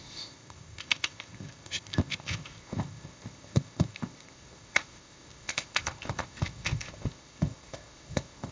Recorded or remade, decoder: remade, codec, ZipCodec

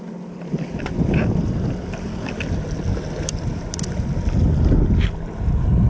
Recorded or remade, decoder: recorded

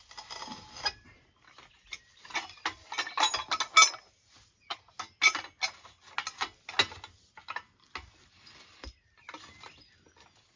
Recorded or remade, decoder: recorded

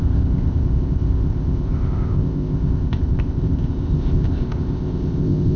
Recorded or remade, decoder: remade, codec, ZipCodec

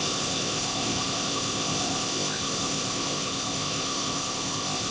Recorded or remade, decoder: remade, codec, ZipCodec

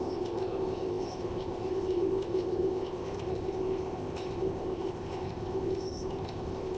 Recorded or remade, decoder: remade, codec, ZipCodec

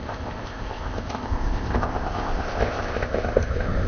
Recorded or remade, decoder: remade, codec, ZipCodec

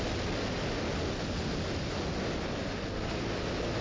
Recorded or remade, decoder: recorded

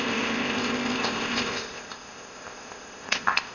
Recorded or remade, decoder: remade, codec, ZipCodec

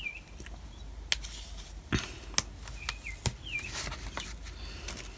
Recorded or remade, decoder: recorded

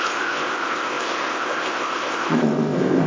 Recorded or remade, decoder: remade, codec, ZipCodec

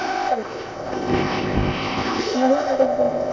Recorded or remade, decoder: remade, codec, ZipCodec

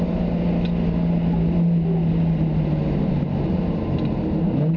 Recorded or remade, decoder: recorded